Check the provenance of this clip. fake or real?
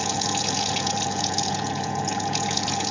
fake